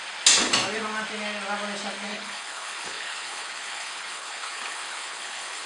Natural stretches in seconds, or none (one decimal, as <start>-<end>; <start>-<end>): 0.0-2.1